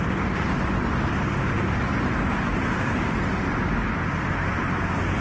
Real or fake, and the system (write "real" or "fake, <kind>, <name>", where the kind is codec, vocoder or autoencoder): real